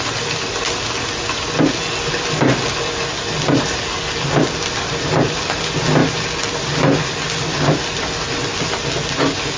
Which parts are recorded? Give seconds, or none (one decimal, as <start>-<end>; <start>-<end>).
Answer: 0.0-9.6

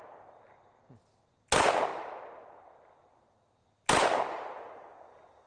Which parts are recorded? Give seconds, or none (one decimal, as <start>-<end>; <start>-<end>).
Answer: 0.0-5.5

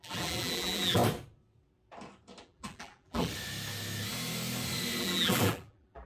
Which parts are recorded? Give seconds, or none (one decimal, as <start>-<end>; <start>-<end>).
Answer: 1.0-2.4; 3.3-5.0

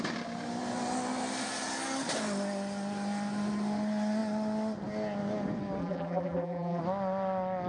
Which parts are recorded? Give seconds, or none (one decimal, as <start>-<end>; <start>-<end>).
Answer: 0.0-5.8; 6.8-7.7

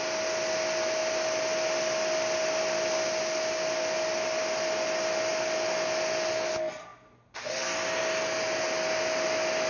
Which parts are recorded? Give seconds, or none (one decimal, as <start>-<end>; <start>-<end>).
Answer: 0.0-9.7

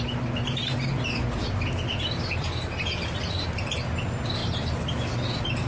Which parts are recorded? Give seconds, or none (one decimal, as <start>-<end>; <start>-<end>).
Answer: 0.0-1.4; 3.7-5.7

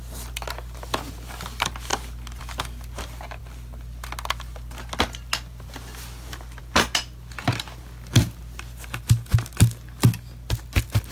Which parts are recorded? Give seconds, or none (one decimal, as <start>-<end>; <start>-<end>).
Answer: 0.0-11.1

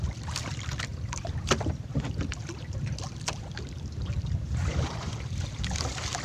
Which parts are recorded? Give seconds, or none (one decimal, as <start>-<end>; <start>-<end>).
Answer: 0.0-0.9; 4.6-6.2